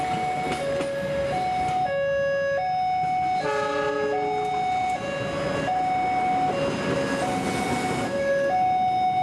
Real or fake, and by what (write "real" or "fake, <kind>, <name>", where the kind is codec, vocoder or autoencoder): real